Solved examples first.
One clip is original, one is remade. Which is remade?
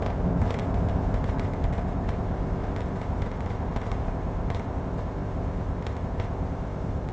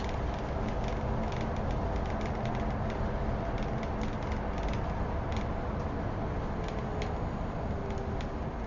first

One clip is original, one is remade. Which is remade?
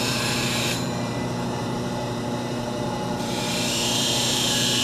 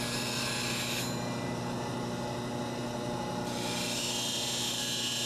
first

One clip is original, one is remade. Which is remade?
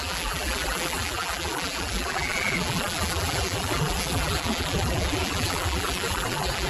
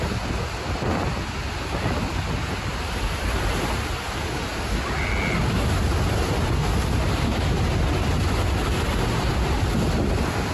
first